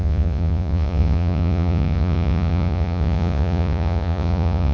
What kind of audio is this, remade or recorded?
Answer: remade